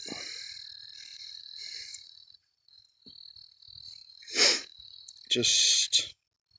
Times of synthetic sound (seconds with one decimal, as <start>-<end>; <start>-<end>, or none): 1.1-2.8; 4.0-5.1